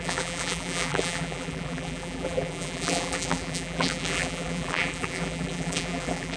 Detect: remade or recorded remade